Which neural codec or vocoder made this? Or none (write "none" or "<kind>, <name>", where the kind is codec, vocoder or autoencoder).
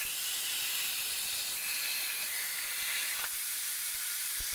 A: vocoder, BigVGAN v2